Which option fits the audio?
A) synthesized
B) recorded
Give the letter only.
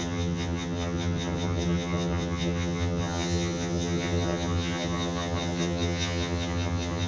A